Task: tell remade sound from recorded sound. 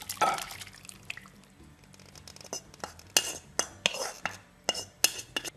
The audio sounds recorded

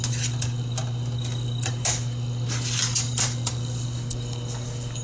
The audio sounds recorded